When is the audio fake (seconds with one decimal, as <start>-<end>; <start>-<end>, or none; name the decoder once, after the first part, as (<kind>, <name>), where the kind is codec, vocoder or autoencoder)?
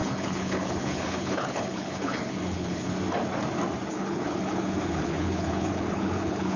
0.0-2.9 (codec, HILCodec); 3.9-6.6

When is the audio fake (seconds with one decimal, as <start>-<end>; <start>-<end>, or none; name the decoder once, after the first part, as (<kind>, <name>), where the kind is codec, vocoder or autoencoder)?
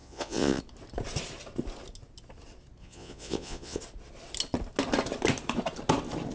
0.0-0.6 (vocoder, Vocos); 2.8-3.8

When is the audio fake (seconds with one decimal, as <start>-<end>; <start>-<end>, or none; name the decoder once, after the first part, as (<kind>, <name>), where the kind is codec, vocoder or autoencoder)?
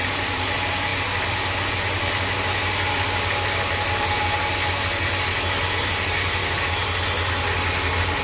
none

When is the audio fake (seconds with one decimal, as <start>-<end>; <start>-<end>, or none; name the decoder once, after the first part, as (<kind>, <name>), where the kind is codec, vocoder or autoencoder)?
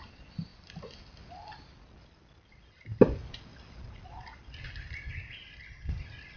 none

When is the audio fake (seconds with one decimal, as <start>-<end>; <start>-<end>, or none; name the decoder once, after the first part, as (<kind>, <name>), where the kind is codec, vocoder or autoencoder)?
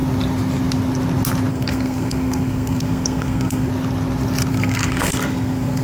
1.5-3.7 (codec, SNAC); 4.5-5.8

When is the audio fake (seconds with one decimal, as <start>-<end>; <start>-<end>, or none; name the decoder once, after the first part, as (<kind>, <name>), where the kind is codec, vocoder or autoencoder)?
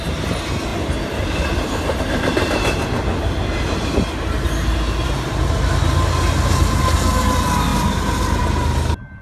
7.7-8.4 (vocoder, BigVGAN v2)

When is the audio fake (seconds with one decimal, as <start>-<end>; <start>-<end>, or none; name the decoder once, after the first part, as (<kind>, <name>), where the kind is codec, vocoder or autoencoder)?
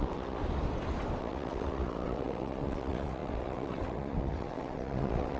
0.0-0.4 (vocoder, WaveNeXt); 1.2-5.4